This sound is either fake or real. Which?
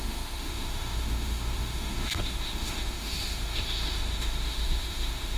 fake